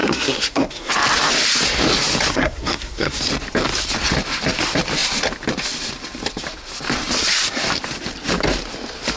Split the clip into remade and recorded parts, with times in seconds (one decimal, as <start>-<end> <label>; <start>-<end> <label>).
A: 0.0-0.9 remade; 0.9-2.3 recorded; 2.3-3.2 remade; 3.2-9.2 recorded